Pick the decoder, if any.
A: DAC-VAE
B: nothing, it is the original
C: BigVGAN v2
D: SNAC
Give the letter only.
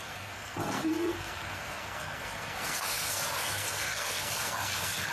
D